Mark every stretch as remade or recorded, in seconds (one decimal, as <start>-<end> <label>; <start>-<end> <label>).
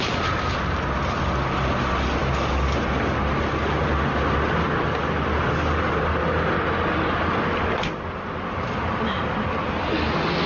0.0-10.5 recorded